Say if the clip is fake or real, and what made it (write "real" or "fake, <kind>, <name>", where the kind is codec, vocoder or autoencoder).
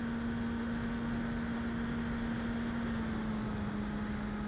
real